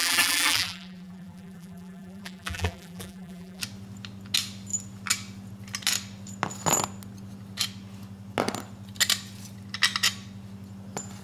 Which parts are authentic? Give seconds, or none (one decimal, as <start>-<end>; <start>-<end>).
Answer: 3.6-11.2